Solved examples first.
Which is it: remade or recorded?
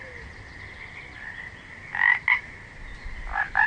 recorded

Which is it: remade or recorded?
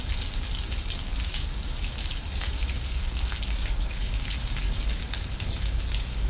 remade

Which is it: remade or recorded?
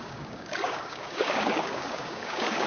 remade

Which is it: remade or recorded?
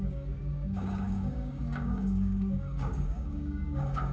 remade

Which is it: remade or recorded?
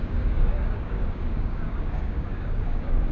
remade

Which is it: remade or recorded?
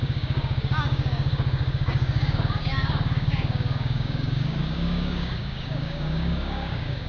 remade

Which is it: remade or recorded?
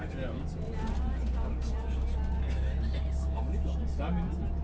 recorded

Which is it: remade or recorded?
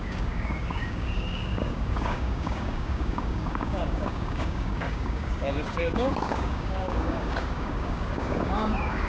remade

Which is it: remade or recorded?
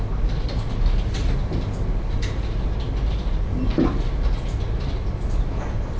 recorded